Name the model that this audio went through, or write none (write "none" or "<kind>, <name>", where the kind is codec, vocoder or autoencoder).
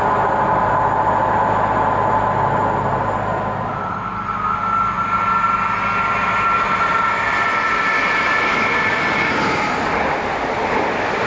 none